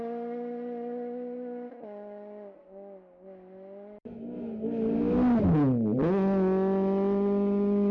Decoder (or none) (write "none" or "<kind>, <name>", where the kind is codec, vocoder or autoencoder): none